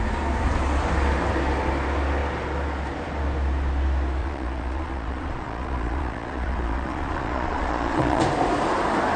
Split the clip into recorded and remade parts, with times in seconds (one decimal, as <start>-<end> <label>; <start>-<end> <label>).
0.0-4.2 recorded; 4.2-8.2 remade; 8.2-9.2 recorded